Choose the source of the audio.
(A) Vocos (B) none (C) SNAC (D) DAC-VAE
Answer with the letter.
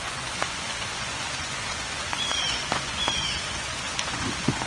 A